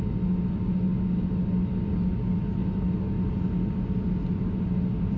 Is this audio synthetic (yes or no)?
no